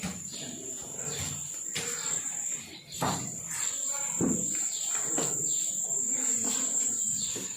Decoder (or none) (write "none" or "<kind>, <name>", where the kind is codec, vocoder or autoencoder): vocoder, BigVGAN v2